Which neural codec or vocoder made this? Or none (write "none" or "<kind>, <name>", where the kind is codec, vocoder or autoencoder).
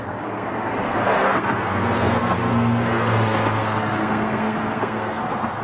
codec, SNAC